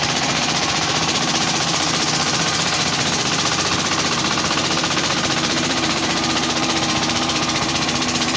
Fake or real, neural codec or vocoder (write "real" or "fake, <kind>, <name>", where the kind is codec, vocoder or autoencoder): fake, vocoder, BigVGAN v2